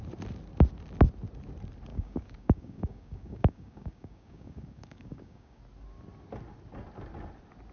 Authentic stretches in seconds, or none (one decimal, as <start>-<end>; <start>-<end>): 0.0-1.9; 5.6-7.7